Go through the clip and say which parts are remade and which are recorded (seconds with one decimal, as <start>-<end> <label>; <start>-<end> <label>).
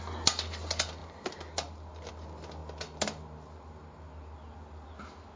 0.0-5.4 recorded